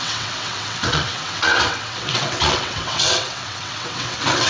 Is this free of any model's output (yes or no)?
no